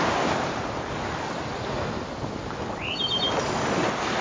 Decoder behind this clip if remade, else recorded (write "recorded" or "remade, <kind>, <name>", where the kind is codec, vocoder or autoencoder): recorded